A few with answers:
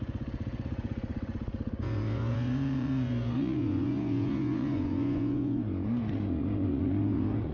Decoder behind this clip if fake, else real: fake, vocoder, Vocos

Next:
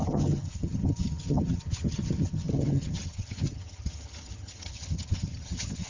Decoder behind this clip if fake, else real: fake, vocoder, HiFi-GAN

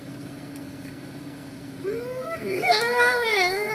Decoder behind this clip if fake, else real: fake, codec, SNAC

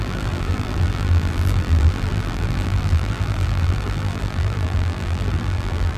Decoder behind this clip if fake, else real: fake, vocoder, BigVGAN v2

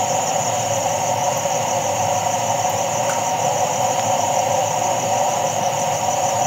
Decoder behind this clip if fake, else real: real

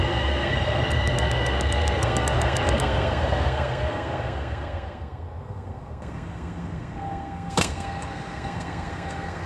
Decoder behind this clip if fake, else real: fake, codec, SNAC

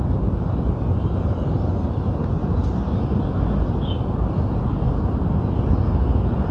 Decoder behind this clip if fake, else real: real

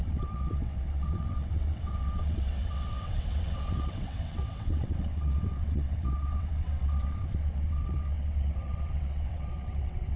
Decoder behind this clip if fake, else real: fake, vocoder, WaveNeXt